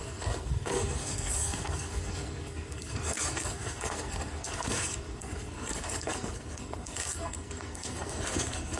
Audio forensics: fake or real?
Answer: fake